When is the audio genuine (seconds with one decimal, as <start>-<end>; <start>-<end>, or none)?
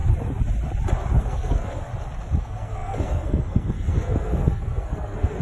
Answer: 0.0-1.2; 1.9-2.4